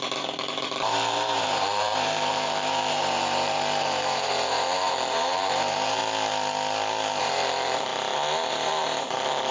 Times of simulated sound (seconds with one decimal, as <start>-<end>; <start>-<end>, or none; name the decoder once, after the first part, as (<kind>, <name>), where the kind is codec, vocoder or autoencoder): 0.0-6.0 (vocoder, BigVGAN v2); 7.2-7.9; 8.5-9.5